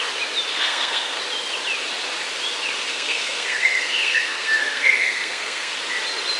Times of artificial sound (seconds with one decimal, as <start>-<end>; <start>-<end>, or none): 0.5-1.2; 2.9-5.7